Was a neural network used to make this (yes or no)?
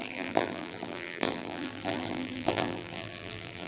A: yes